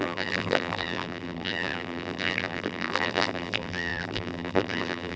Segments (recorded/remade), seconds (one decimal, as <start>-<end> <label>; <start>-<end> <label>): 0.0-5.2 remade